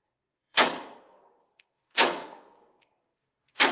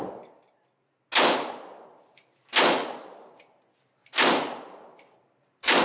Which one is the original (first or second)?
second